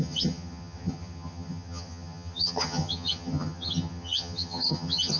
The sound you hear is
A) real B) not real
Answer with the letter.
B